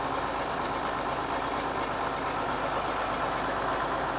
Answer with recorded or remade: recorded